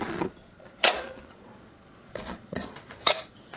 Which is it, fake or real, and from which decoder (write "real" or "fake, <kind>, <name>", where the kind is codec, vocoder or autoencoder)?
fake, vocoder, Vocos